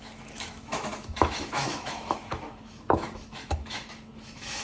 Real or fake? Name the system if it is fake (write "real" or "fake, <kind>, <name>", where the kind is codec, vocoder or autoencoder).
fake, autoencoder, DAC-VAE